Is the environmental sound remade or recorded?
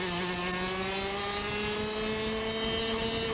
recorded